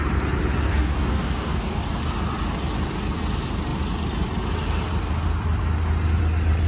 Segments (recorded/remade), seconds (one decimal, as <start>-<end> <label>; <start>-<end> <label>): 0.0-0.7 recorded; 0.7-1.9 remade; 1.9-6.7 recorded